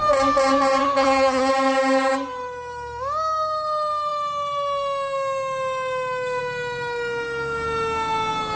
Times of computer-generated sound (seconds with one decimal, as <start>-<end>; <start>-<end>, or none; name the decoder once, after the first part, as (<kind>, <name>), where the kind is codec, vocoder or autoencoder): 0.8-1.5 (vocoder, HiFi-GAN)